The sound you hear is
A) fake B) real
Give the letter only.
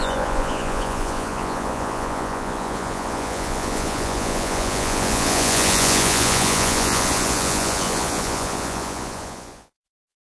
A